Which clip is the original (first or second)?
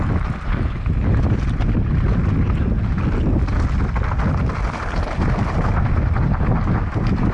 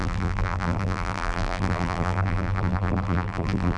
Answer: first